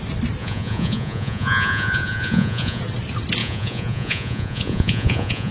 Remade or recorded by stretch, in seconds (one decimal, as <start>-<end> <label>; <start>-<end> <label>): 0.0-0.4 recorded; 0.4-2.8 remade; 2.8-3.4 recorded; 3.4-5.5 remade